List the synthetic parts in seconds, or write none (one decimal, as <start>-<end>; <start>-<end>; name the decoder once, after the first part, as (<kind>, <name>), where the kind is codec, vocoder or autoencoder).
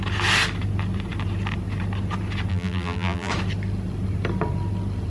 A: 2.5-3.3 (vocoder, BigVGAN v2)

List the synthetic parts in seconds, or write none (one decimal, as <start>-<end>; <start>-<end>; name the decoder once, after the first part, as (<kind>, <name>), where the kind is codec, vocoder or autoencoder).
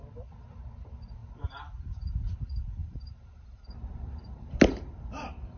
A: 2.8-5.6 (vocoder, BigVGAN v2)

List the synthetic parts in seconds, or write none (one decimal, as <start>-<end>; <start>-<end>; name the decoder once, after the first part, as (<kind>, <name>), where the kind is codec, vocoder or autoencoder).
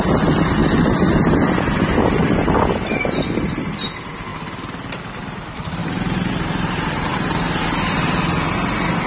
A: 5.8-7.6 (vocoder, BigVGAN v2)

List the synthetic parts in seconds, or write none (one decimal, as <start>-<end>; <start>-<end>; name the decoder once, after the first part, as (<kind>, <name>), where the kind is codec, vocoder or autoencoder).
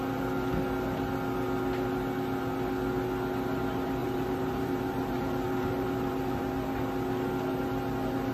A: 4.0-6.4 (vocoder, BigVGAN v2)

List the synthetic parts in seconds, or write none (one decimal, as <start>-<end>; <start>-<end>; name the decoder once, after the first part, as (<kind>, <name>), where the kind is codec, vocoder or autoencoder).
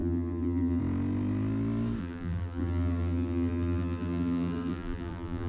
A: 0.0-0.8 (vocoder, BigVGAN v2); 2.0-5.5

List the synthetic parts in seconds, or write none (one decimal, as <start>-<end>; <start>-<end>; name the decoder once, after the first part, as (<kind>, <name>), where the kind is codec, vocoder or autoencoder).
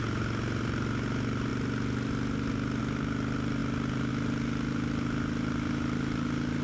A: none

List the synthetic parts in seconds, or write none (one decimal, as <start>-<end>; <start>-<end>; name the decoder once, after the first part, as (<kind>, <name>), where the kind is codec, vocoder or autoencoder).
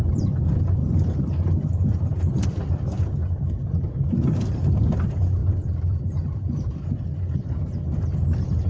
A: 0.0-8.7 (vocoder, BigVGAN v2)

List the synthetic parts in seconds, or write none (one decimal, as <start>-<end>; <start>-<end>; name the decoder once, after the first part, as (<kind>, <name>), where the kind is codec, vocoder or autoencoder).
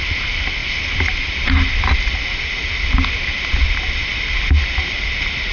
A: none